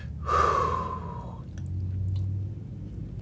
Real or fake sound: real